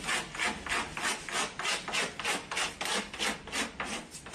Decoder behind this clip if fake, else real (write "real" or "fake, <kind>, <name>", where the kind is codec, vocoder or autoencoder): real